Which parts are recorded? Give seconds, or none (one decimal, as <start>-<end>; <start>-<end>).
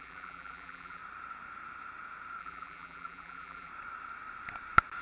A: 1.0-2.4; 3.7-5.0